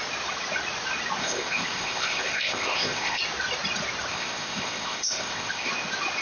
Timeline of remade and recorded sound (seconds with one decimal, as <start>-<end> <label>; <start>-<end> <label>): 0.0-1.2 recorded; 1.2-3.2 remade; 3.2-4.1 recorded; 4.1-5.7 remade; 5.7-6.2 recorded